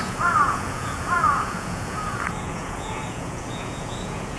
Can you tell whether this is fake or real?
fake